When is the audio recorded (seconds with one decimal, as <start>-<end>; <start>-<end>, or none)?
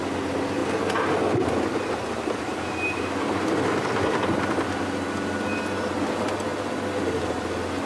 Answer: 0.0-7.9